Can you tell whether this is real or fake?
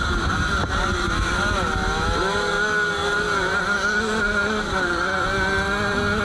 real